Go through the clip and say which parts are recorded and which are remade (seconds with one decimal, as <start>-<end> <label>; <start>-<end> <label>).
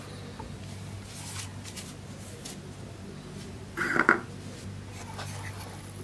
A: 0.0-6.0 recorded